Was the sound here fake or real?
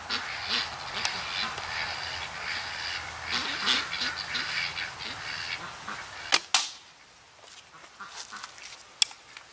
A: real